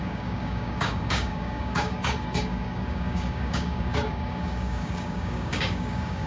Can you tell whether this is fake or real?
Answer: fake